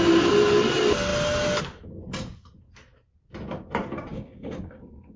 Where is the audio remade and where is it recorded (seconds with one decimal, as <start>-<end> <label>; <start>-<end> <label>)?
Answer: 0.0-4.1 recorded; 4.1-4.8 remade; 4.8-5.2 recorded

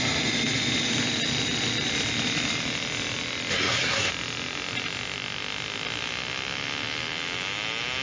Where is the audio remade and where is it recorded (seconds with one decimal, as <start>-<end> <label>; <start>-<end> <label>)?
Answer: 0.0-3.5 recorded; 3.5-4.1 remade; 4.1-8.0 recorded

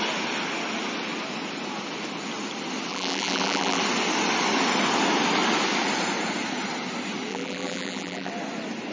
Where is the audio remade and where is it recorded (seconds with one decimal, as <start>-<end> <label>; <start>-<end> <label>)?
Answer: 0.0-2.9 recorded; 2.9-3.8 remade; 3.8-7.3 recorded; 7.3-8.3 remade; 8.3-8.9 recorded

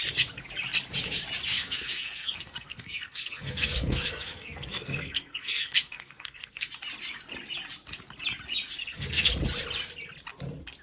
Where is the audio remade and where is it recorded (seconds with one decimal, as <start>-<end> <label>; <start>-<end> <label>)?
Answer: 0.0-1.5 recorded; 1.5-6.7 remade; 6.7-8.8 recorded; 8.8-9.3 remade; 9.3-10.8 recorded

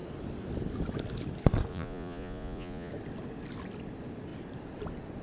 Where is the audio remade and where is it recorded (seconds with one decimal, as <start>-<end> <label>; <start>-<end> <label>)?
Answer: 0.0-1.7 recorded; 1.7-2.9 remade; 2.9-5.2 recorded

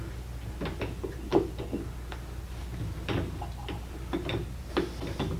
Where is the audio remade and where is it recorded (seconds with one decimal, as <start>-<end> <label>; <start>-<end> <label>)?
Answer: 0.0-1.3 recorded; 1.3-4.5 remade; 4.5-5.4 recorded

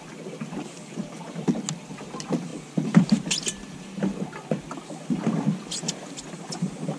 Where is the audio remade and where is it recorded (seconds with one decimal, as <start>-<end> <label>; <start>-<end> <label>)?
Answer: 0.0-7.0 recorded

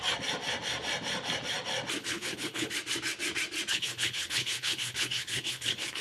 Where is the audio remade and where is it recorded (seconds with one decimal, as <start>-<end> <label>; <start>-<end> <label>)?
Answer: 0.0-2.0 recorded; 2.0-2.7 remade; 2.7-3.7 recorded; 3.7-6.0 remade